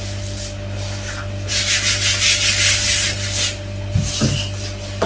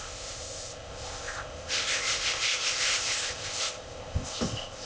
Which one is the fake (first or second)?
second